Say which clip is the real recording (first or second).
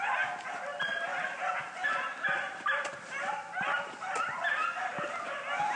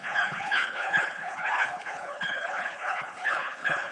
first